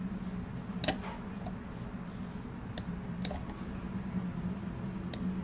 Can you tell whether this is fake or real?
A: real